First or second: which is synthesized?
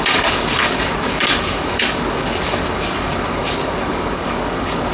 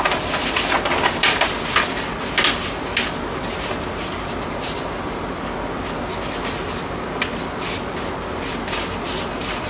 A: first